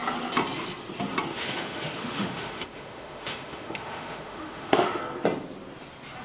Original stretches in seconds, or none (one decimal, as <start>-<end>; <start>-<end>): 0.0-1.3; 5.0-6.2